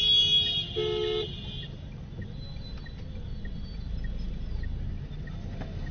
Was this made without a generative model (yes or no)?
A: yes